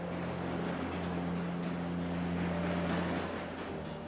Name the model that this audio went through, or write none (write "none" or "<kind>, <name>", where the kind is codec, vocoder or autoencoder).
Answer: none